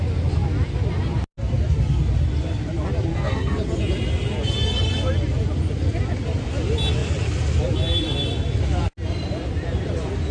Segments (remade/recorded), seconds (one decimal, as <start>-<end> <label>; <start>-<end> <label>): 0.0-3.1 recorded; 3.1-3.6 remade; 3.6-10.3 recorded